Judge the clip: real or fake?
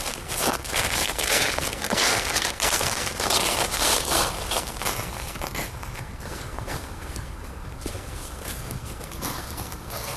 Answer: fake